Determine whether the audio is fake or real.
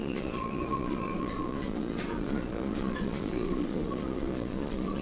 fake